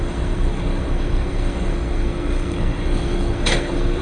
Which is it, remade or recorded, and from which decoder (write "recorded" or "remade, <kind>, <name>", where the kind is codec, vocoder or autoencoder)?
remade, codec, SNAC